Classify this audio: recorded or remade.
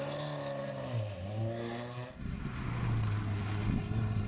recorded